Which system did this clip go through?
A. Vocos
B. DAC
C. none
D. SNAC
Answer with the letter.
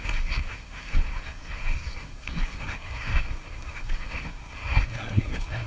D